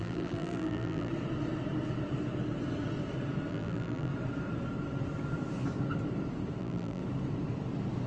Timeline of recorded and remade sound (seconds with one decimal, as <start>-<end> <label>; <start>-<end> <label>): 0.0-1.1 remade; 1.1-3.5 recorded; 3.5-4.1 remade; 4.1-6.6 recorded; 6.6-7.0 remade; 7.0-8.1 recorded